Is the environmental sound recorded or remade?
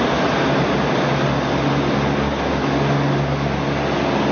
recorded